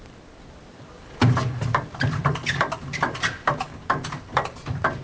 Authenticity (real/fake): real